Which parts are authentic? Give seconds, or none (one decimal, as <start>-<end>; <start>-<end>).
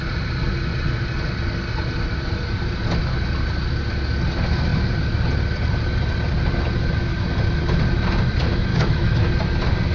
0.0-8.7; 9.3-9.9